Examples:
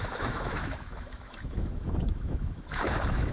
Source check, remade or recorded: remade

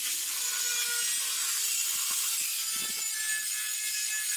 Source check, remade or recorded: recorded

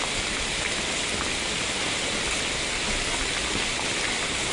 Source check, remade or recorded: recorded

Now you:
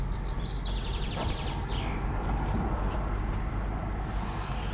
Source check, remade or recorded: recorded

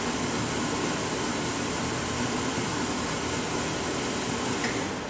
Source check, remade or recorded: recorded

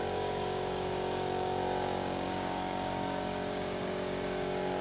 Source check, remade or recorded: remade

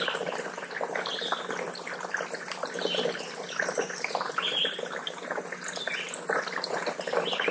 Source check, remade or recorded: recorded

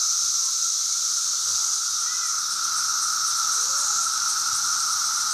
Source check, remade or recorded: recorded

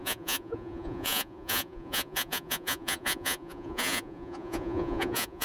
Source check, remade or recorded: remade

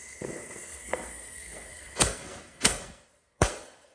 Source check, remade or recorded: remade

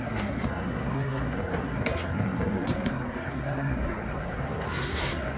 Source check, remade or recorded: remade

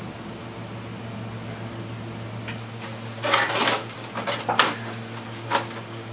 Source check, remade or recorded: recorded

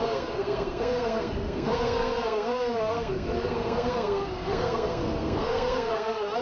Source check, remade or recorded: remade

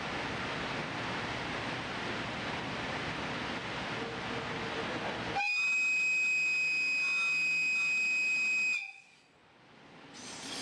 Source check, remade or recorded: recorded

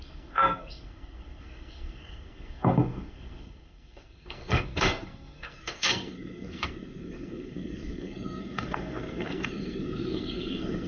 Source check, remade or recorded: remade